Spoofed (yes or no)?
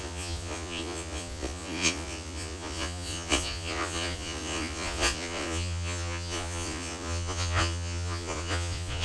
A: yes